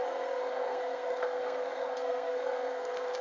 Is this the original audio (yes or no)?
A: no